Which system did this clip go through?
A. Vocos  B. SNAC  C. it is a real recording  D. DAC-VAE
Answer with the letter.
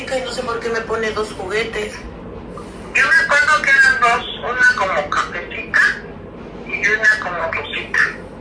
C